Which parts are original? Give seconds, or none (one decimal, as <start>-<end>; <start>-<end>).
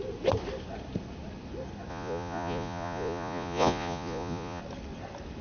0.0-1.9; 4.6-5.4